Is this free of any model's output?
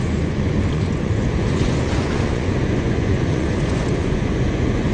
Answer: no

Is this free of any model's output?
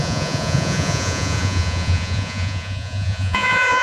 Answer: no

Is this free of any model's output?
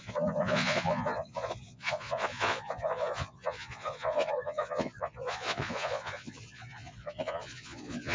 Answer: no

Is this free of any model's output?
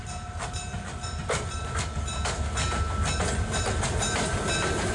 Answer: yes